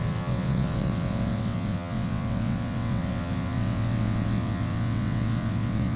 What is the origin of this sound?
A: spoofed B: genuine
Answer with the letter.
A